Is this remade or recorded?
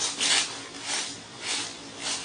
recorded